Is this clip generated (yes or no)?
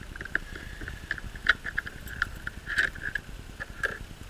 no